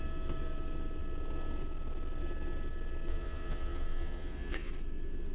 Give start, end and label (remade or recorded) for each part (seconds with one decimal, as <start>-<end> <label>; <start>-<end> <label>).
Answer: 0.0-3.1 recorded; 3.1-4.7 remade; 4.7-5.3 recorded